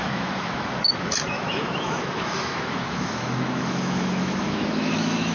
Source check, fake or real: fake